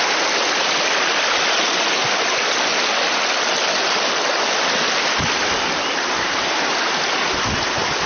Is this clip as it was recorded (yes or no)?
yes